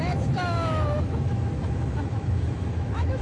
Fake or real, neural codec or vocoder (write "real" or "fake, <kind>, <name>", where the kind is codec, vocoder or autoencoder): fake, autoencoder, DAC-VAE